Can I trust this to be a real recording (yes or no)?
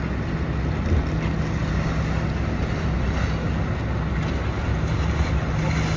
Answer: yes